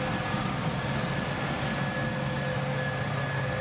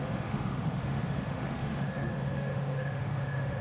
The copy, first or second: second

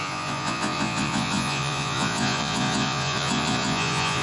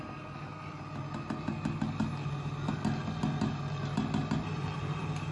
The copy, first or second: first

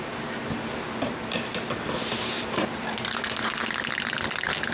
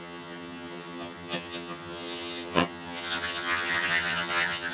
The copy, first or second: second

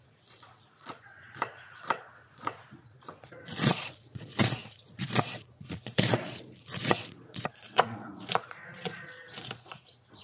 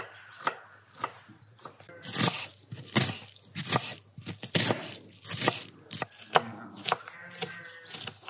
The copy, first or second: first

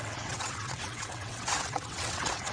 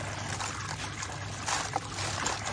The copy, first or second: first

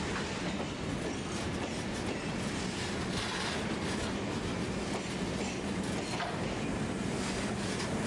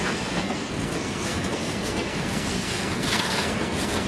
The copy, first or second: second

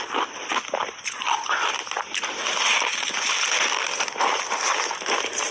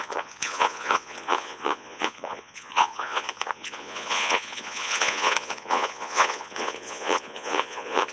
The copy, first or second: second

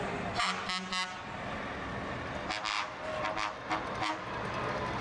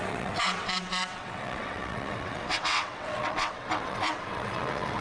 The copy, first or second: second